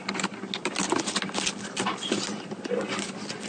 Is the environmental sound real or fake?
real